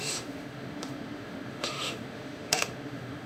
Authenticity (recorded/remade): remade